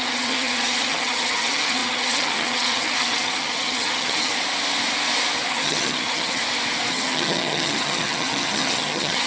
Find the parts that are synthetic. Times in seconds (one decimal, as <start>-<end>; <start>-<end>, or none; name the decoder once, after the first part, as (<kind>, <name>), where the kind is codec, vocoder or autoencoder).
0.0-4.3 (vocoder, HiFi-GAN); 5.5-6.4; 6.9-9.3